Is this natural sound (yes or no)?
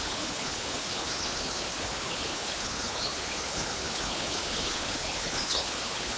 no